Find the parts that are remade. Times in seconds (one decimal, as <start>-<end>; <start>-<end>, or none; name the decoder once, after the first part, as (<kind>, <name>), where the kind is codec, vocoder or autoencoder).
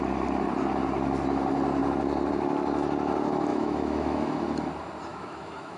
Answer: 3.5-4.3 (autoencoder, DAC-VAE); 5.1-5.8